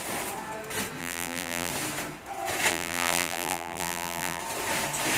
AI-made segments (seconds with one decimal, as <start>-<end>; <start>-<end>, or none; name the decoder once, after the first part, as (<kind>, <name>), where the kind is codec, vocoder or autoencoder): 1.0-1.7 (vocoder, BigVGAN v2); 2.7-4.4